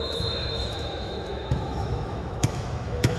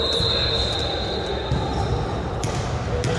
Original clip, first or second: second